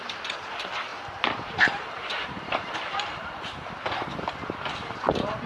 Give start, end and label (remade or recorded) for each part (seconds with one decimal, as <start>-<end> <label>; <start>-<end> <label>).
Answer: 0.0-0.9 recorded; 0.9-4.2 remade; 4.2-4.8 recorded; 4.8-5.5 remade